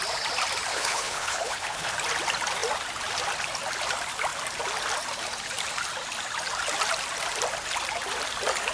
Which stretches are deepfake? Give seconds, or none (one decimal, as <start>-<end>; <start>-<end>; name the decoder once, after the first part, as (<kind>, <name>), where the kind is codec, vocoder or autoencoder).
0.7-1.9 (codec, HILCodec)